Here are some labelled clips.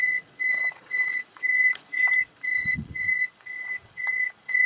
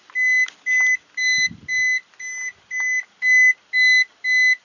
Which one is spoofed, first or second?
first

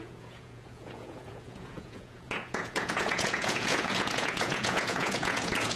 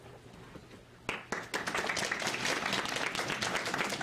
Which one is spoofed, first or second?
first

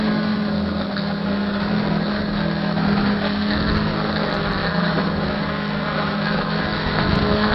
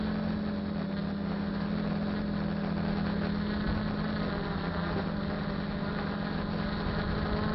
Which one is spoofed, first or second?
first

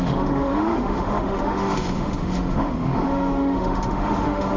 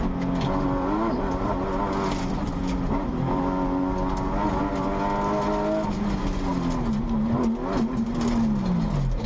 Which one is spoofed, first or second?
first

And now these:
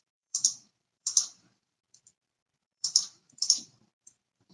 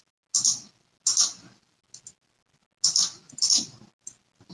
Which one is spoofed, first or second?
first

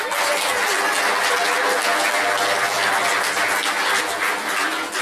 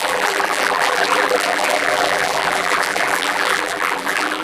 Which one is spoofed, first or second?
second